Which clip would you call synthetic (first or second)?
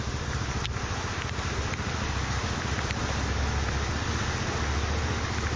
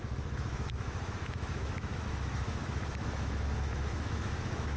second